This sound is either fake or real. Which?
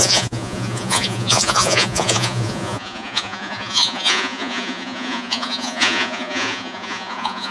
fake